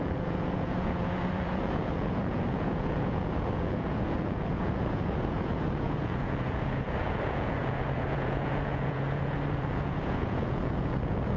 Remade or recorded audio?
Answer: remade